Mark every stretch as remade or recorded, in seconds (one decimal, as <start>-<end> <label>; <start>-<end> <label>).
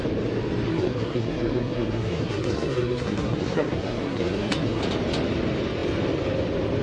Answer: 0.0-0.7 recorded; 0.7-4.8 remade; 4.8-6.8 recorded